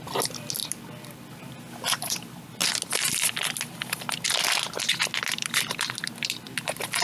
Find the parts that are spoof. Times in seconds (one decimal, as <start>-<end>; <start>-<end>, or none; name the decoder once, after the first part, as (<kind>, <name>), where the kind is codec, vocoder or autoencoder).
none